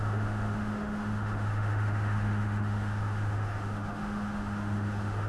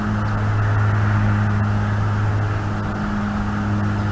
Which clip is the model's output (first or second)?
first